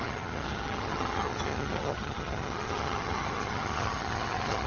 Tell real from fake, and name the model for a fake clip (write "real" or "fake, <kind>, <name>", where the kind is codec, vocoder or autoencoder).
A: fake, vocoder, HiFi-GAN